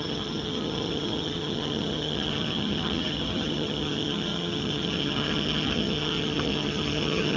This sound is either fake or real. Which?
fake